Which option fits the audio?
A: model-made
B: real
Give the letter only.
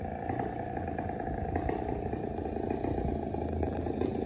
B